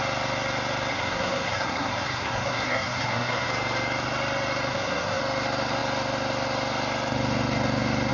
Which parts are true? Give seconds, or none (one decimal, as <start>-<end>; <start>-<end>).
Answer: 0.0-0.9; 3.5-4.7; 5.2-8.1